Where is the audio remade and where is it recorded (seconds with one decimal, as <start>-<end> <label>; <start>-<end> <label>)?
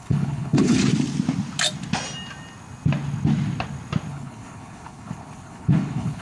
0.0-0.8 remade; 0.8-4.1 recorded; 4.1-6.2 remade